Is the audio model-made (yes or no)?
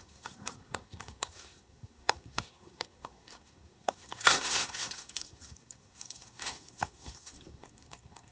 yes